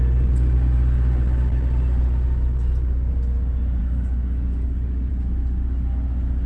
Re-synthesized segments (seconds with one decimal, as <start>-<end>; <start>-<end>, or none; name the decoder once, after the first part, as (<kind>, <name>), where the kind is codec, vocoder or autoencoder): 3.8-5.1 (codec, DAC)